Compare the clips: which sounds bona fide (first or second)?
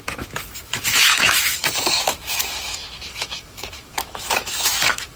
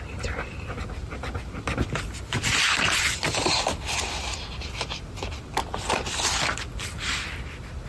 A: second